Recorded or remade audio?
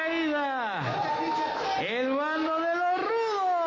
recorded